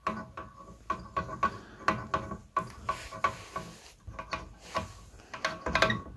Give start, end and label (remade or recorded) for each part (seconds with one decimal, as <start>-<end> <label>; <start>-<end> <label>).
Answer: 0.0-6.2 recorded